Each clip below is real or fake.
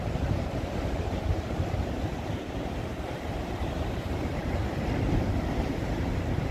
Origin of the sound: fake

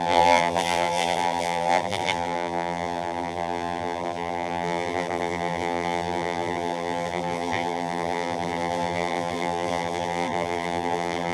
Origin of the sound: fake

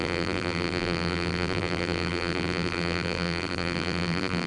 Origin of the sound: fake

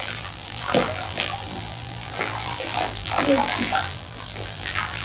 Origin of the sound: fake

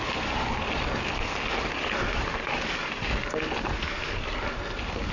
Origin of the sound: real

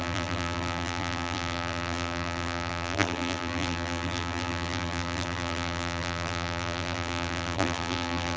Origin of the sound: fake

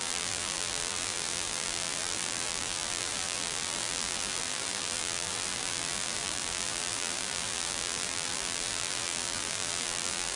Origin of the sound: fake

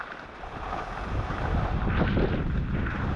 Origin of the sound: real